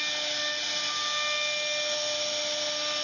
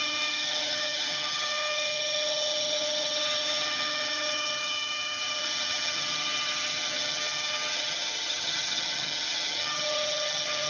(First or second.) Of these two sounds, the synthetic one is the second